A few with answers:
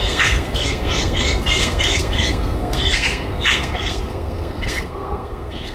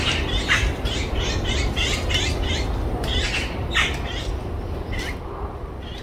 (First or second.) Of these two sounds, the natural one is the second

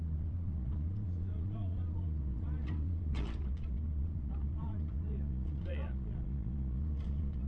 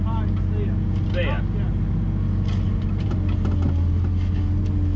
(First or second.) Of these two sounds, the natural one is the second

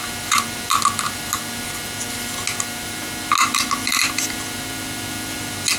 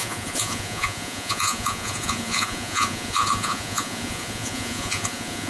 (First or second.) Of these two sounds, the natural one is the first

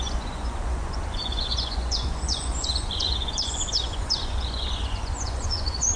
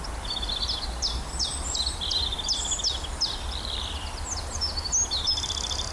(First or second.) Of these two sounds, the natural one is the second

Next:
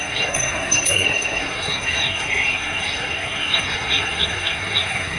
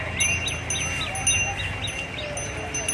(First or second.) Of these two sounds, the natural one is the second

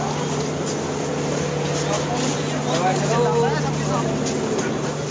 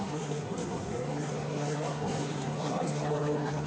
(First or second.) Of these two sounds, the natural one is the first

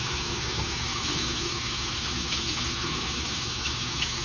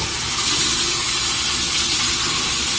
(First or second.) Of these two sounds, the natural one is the second